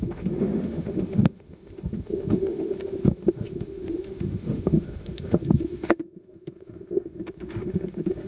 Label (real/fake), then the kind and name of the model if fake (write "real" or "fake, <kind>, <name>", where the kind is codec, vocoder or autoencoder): fake, autoencoder, DAC-VAE